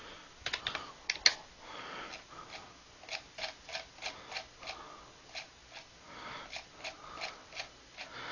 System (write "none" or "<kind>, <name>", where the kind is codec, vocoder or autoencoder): none